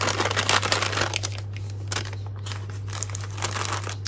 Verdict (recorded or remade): recorded